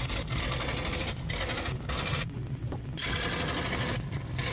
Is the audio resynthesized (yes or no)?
no